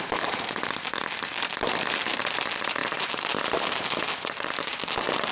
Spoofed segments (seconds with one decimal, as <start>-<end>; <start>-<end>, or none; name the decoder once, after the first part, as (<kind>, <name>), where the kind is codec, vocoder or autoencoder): 0.0-5.3 (vocoder, BigVGAN v2)